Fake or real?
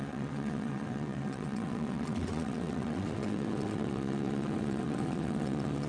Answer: fake